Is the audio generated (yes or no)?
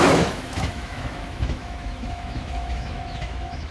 yes